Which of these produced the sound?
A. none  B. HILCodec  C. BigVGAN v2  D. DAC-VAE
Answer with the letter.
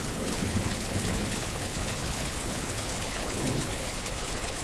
B